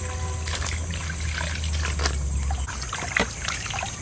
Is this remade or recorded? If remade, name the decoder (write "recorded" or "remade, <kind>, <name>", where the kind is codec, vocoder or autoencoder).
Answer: recorded